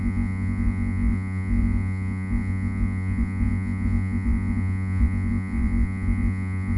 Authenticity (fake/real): fake